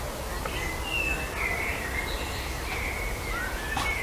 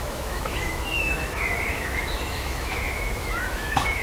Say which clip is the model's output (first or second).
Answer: second